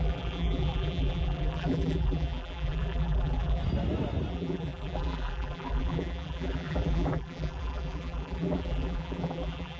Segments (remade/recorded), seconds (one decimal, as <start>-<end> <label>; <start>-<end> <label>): 0.0-3.6 remade; 3.6-4.3 recorded; 4.3-9.8 remade